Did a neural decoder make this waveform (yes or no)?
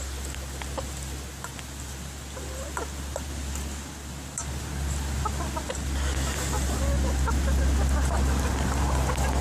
no